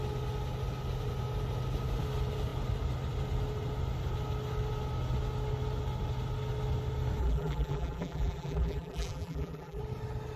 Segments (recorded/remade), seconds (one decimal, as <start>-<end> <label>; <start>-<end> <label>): 0.0-7.2 recorded; 7.2-9.8 remade; 9.8-10.4 recorded